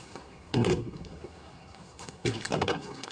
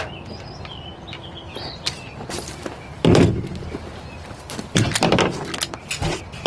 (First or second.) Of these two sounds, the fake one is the first